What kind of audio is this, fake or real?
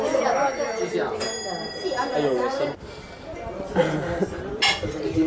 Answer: real